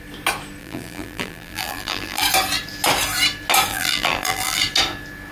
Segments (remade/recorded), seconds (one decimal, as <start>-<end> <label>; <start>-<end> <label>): 0.0-0.6 recorded; 0.6-2.2 remade; 2.2-3.7 recorded; 3.7-4.6 remade; 4.6-5.3 recorded